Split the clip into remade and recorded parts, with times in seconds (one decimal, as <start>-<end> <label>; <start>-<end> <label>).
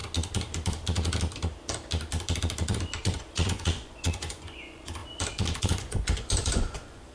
0.0-3.0 recorded; 3.0-5.0 remade; 5.0-5.6 recorded; 5.6-7.1 remade